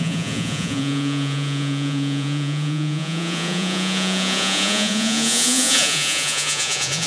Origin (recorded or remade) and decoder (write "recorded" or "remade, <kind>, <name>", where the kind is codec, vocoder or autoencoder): remade, vocoder, Vocos